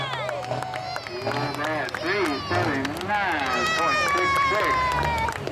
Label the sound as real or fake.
real